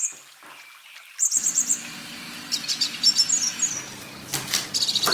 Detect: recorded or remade recorded